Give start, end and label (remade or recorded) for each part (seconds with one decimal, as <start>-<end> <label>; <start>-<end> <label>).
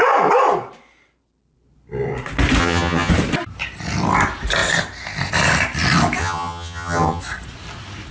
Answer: 0.0-2.6 recorded; 2.6-3.1 remade; 3.1-6.2 recorded; 6.2-7.2 remade; 7.2-8.1 recorded